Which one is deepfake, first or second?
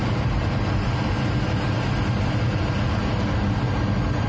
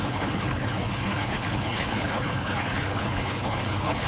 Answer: second